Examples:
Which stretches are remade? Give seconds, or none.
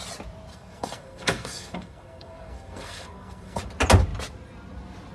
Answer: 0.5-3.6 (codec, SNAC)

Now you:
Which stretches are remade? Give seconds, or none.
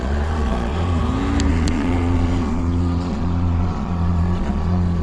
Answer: 0.0-1.0 (vocoder, Vocos); 1.5-5.0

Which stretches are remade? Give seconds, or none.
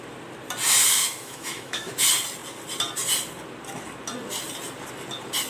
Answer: 1.0-1.9 (autoencoder, DAC-VAE)